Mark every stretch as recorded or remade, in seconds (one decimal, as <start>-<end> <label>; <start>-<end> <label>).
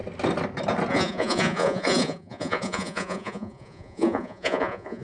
0.0-0.9 recorded; 0.9-5.0 remade